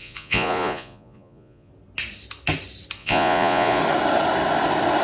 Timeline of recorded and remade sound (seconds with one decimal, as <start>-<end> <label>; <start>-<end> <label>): 0.0-1.7 remade; 1.7-3.0 recorded; 3.0-3.8 remade; 3.8-5.0 recorded